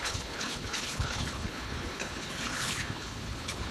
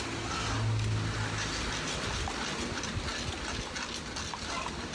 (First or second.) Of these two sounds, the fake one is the first